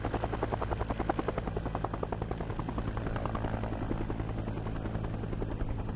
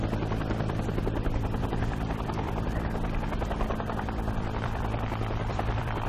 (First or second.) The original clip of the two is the first